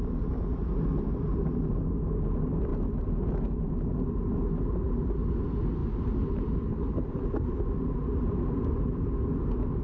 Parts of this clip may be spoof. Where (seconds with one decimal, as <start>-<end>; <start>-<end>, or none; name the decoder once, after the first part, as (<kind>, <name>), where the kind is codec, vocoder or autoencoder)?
none